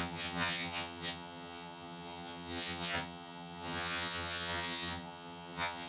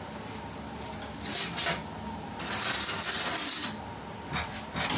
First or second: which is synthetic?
first